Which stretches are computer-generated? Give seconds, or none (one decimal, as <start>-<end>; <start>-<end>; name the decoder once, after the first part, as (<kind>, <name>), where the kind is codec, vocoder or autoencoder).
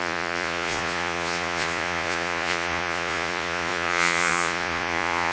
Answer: 0.0-5.3 (vocoder, Vocos)